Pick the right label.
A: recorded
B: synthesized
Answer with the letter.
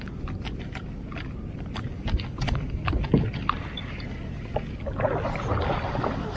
A